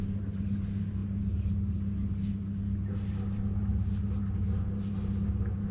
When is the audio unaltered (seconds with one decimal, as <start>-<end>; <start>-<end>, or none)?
0.0-5.7